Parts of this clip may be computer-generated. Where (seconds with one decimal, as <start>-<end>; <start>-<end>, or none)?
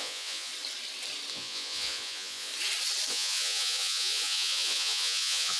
0.0-0.5; 1.3-2.5; 3.1-5.6